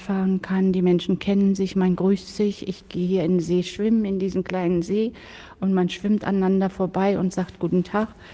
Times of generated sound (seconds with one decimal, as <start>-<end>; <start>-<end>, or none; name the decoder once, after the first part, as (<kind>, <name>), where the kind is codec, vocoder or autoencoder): 3.7-5.3 (codec, DAC)